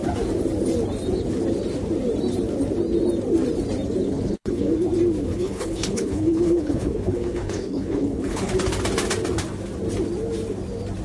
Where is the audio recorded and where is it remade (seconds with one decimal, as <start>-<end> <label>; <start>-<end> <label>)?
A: 0.0-4.0 recorded; 4.0-4.7 remade; 4.7-5.3 recorded; 5.3-8.5 remade; 8.5-11.0 recorded